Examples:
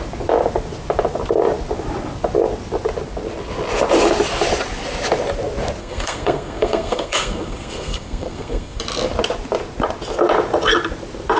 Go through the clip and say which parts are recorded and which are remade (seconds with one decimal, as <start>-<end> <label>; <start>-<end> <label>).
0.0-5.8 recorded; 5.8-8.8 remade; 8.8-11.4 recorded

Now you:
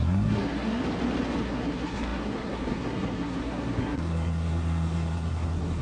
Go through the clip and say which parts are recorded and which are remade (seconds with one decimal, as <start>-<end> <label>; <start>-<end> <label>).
0.0-0.8 remade; 0.8-1.4 recorded; 1.4-5.8 remade

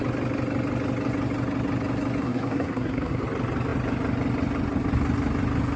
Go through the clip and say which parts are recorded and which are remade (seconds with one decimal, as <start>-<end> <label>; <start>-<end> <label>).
0.0-2.2 recorded; 2.2-3.2 remade; 3.2-5.8 recorded

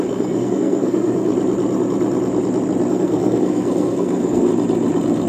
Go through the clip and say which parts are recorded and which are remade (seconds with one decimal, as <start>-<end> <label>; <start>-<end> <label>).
0.0-1.3 remade; 1.3-2.9 recorded; 2.9-4.5 remade; 4.5-5.3 recorded

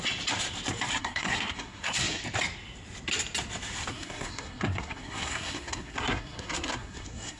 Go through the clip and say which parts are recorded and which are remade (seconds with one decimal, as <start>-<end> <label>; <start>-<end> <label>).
0.0-1.0 recorded; 1.0-2.2 remade; 2.2-3.9 recorded; 3.9-7.4 remade

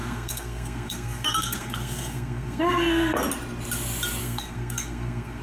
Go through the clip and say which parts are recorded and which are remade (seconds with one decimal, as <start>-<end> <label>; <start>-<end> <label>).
0.0-3.2 remade; 3.2-4.2 recorded; 4.2-5.4 remade

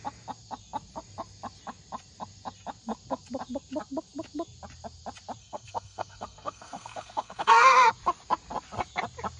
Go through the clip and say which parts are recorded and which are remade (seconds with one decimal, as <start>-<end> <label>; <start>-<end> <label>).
0.0-5.4 recorded; 5.4-7.9 remade; 7.9-9.4 recorded

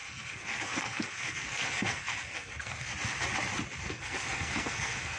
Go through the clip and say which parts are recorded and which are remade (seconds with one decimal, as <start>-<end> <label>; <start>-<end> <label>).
0.0-2.9 remade; 2.9-3.8 recorded; 3.8-5.2 remade